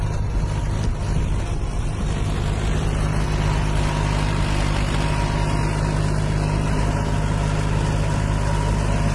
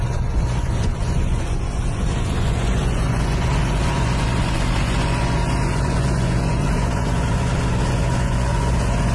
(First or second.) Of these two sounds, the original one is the first